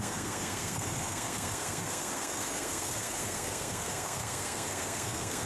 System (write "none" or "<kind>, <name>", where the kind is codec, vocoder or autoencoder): codec, SNAC